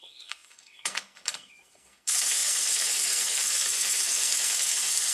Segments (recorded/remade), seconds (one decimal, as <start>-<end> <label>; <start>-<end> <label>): 0.0-5.1 remade